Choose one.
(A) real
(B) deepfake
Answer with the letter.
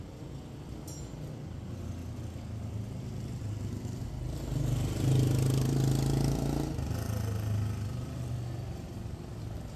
A